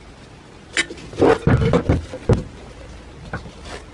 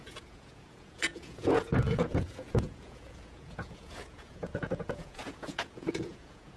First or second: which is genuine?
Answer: first